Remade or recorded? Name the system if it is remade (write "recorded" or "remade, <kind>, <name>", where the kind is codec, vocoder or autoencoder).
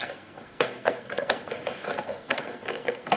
remade, codec, SNAC